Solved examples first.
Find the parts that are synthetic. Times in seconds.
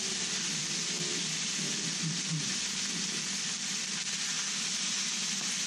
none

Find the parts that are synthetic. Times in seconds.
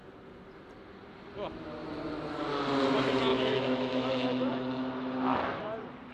3.3-4.5 (autoencoder, DAC-VAE)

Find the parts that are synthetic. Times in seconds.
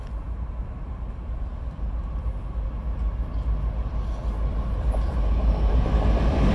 none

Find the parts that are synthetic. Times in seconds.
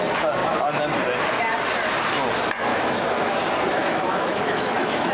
2.7-3.4 (autoencoder, DAC-VAE); 3.8-5.1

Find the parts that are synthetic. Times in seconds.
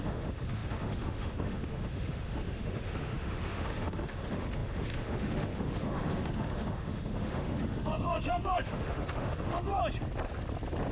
0.0-9.8 (autoencoder, DAC-VAE)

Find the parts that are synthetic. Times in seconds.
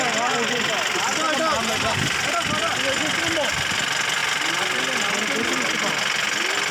none